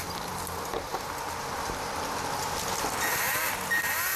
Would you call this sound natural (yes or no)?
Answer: no